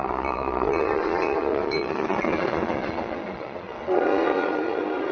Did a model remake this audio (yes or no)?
yes